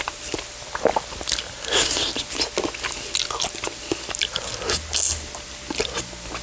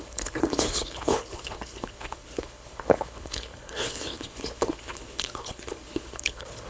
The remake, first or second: second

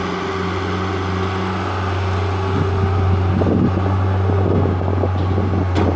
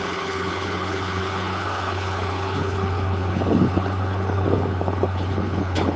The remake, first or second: second